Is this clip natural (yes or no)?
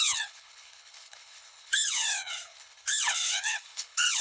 no